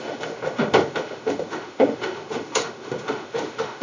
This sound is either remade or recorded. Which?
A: remade